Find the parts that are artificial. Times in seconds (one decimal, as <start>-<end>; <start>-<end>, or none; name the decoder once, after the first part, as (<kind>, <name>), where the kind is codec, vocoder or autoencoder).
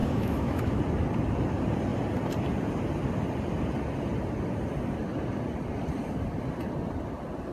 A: 0.0-0.8 (autoencoder, DAC-VAE)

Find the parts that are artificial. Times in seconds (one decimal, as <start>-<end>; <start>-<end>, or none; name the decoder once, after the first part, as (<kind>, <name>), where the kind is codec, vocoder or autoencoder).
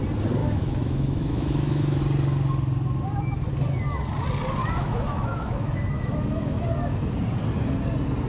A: 0.4-2.0 (autoencoder, DAC-VAE); 4.6-6.6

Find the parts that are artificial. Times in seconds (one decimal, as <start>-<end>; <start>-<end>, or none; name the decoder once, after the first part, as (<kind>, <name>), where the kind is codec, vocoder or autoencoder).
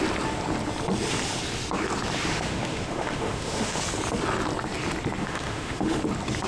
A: 2.3-3.8 (autoencoder, DAC-VAE); 5.2-6.0